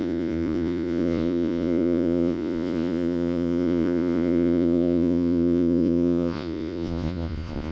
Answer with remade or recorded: remade